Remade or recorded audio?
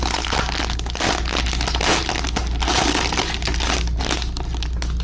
recorded